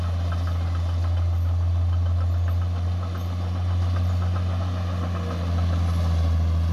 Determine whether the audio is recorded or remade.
recorded